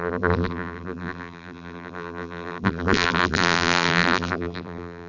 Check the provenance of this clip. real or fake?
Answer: fake